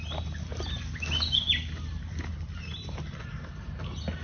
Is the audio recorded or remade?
recorded